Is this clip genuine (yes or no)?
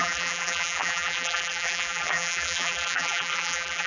no